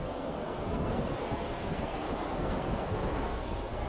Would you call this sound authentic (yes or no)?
no